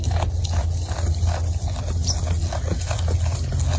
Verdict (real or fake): real